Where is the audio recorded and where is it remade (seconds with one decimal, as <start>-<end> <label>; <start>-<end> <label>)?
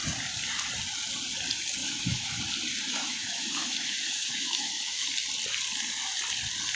0.0-1.8 recorded; 1.8-2.4 remade; 2.4-2.9 recorded; 2.9-5.1 remade; 5.1-6.8 recorded